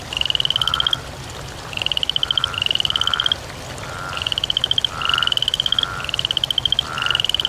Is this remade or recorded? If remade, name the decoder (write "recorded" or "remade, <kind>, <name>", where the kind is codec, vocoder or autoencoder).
recorded